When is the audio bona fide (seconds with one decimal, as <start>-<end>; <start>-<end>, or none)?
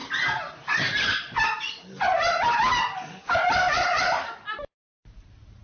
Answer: 0.0-5.6